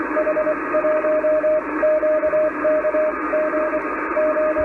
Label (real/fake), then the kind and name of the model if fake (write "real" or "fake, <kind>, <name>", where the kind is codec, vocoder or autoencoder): real